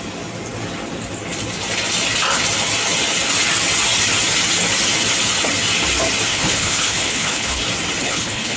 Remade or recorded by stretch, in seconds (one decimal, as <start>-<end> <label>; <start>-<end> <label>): 0.0-6.3 recorded; 6.3-7.6 remade; 7.6-8.0 recorded; 8.0-8.6 remade